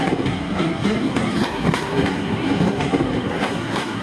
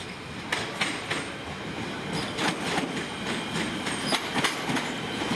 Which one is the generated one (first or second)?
first